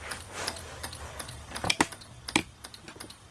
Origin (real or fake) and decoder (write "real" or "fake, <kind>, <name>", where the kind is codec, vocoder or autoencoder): real